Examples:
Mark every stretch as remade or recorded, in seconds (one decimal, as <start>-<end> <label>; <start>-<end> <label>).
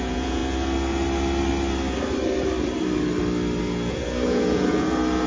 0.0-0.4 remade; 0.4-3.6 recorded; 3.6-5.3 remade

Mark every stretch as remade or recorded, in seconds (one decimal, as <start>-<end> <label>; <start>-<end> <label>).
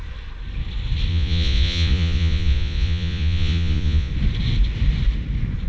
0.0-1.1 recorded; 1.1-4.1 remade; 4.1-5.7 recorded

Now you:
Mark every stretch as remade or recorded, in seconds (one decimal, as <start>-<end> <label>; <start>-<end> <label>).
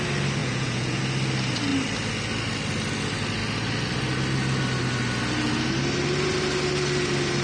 0.0-0.4 recorded; 0.4-1.0 remade; 1.0-7.4 recorded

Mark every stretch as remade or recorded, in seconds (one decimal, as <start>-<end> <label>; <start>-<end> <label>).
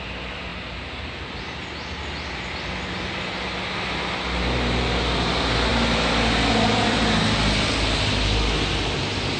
0.0-9.4 recorded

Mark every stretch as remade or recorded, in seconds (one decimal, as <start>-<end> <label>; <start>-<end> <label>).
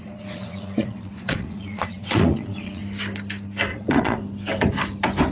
0.0-2.8 remade; 2.8-3.7 recorded; 3.7-4.2 remade; 4.2-5.3 recorded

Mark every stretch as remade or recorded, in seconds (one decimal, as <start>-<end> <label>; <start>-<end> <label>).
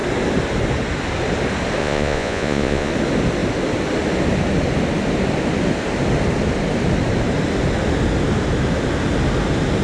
0.0-1.8 recorded; 1.8-2.9 remade; 2.9-9.8 recorded